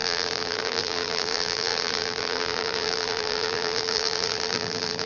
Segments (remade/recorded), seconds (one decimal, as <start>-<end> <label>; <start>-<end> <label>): 0.0-5.1 remade

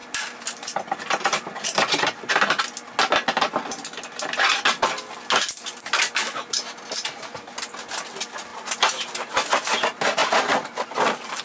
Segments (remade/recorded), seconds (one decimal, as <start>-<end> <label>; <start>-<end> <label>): 0.0-0.8 remade; 0.8-10.2 recorded; 10.2-11.4 remade

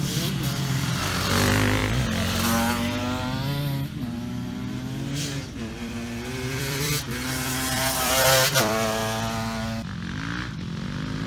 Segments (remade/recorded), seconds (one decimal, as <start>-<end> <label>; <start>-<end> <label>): 0.0-1.8 remade; 1.8-5.7 recorded; 5.7-9.0 remade; 9.0-11.3 recorded